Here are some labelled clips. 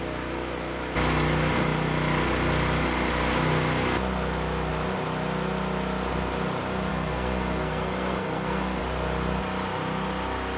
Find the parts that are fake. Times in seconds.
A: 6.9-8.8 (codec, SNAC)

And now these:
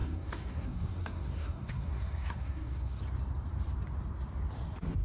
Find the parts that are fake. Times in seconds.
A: 0.0-3.0 (codec, SNAC)

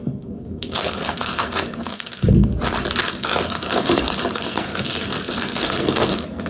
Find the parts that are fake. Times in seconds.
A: 0.0-2.5 (codec, SNAC); 3.0-6.5

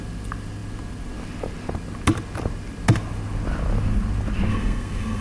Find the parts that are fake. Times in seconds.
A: 4.5-5.2 (codec, SNAC)

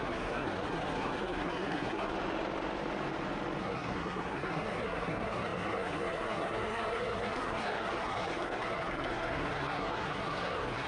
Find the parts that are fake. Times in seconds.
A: 0.0-2.1 (codec, SNAC); 3.6-10.9

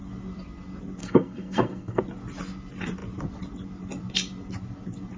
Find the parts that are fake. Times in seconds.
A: 1.0-2.0 (codec, SNAC)